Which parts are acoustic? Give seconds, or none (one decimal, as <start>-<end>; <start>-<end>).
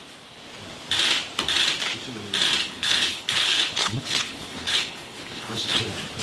0.0-2.6; 5.8-6.2